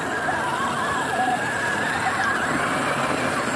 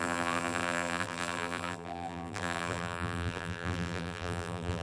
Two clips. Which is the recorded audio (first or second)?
first